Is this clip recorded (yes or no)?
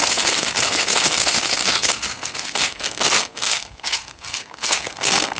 no